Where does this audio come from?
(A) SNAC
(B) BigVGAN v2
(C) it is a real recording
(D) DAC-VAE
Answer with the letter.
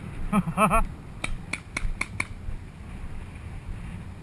C